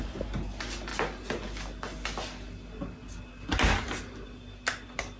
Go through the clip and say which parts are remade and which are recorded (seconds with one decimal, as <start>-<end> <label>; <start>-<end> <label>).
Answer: 0.0-5.2 recorded